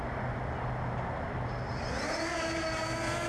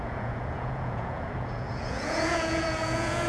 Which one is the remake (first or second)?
second